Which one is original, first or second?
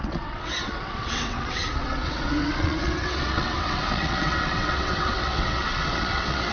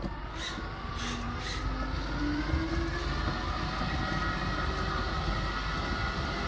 second